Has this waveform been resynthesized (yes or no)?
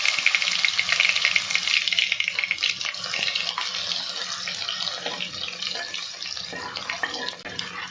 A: no